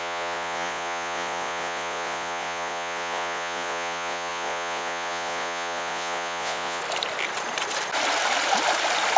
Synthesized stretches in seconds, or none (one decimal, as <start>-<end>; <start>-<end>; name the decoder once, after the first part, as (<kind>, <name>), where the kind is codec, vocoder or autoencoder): 0.0-6.8 (vocoder, Vocos)